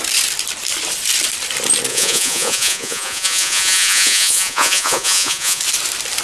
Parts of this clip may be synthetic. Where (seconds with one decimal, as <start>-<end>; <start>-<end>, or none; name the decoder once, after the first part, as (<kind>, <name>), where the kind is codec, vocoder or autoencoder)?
1.9-5.6 (vocoder, Vocos)